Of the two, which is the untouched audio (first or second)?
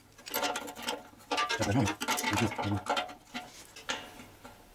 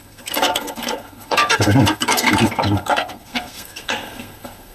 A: first